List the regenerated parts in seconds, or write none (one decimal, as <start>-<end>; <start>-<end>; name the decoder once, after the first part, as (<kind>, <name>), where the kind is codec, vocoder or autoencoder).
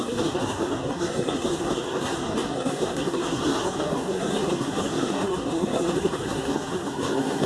0.0-7.5 (codec, SNAC)